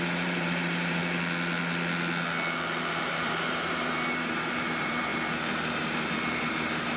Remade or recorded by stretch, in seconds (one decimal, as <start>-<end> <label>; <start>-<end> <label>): 0.0-1.0 remade; 1.0-3.0 recorded; 3.0-5.1 remade; 5.1-5.8 recorded; 5.8-7.0 remade